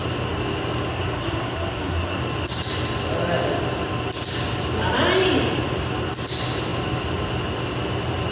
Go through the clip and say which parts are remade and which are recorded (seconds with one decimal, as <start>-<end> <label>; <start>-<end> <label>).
0.0-0.9 recorded; 0.9-2.2 remade; 2.2-8.3 recorded